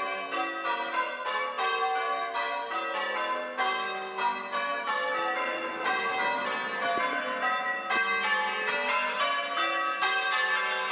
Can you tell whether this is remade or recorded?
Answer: recorded